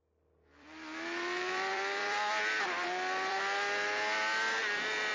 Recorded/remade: remade